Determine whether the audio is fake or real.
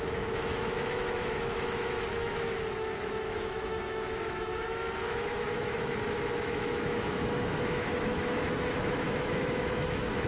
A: fake